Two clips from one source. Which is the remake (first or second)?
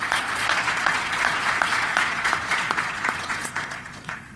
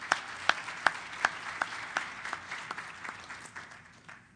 first